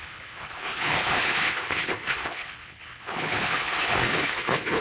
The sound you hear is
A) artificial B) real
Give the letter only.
A